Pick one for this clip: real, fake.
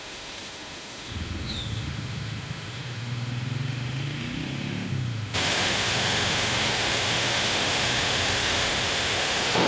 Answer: fake